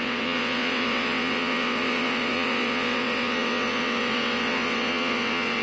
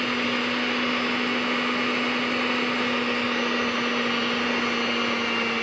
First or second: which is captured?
second